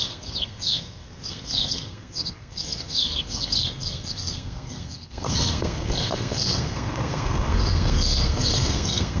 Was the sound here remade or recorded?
remade